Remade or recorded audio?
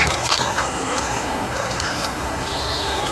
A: remade